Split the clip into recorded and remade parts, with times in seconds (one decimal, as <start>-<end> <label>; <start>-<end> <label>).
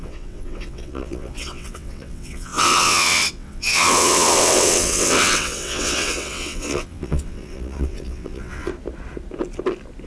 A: 0.0-8.7 remade; 8.7-10.1 recorded